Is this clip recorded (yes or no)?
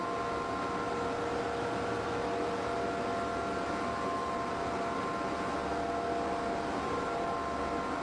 yes